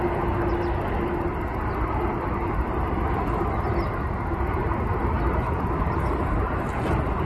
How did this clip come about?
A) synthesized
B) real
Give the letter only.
B